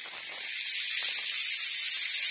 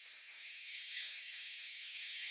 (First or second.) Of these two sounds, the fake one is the second